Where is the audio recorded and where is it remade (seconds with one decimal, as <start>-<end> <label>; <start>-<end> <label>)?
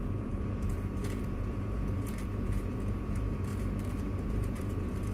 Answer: 0.0-3.5 remade; 3.5-4.0 recorded; 4.0-5.1 remade